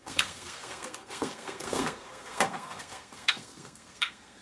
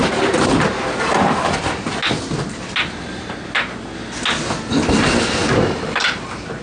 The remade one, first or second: first